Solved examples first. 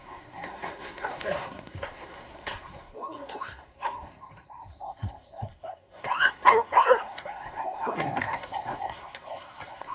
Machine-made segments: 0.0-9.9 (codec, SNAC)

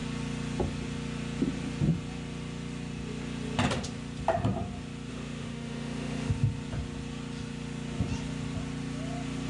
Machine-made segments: 5.1-6.3 (autoencoder, DAC-VAE)

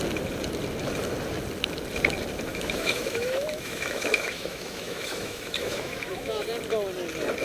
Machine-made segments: 2.5-6.4 (autoencoder, DAC-VAE)

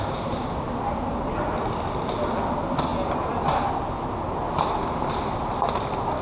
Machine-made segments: none

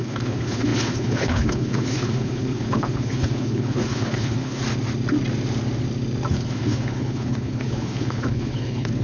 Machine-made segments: 0.0-4.6 (codec, HILCodec); 6.3-9.0

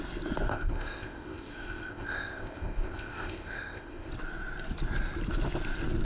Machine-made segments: 0.5-4.1 (codec, ZipCodec)

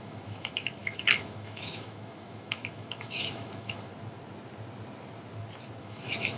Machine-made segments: 0.0-3.9 (autoencoder, DAC-VAE); 5.8-6.4